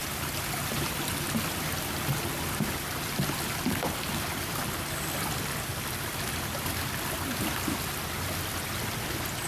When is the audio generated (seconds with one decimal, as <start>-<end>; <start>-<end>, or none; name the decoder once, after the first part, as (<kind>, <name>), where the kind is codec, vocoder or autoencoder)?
0.0-2.1 (vocoder, BigVGAN v2); 5.7-6.8